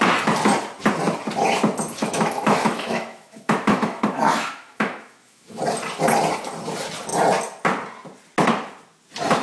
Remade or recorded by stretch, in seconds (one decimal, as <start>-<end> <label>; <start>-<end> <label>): 0.0-2.0 recorded; 2.0-5.6 remade; 5.6-9.4 recorded